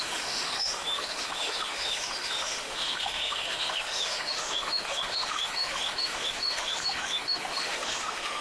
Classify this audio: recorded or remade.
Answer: remade